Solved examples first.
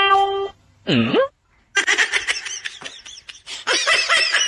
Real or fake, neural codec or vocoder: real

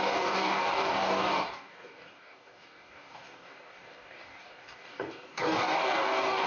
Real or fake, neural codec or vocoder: fake, codec, DAC